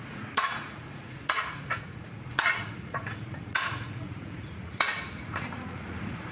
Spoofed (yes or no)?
yes